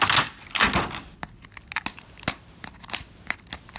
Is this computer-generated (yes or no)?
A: no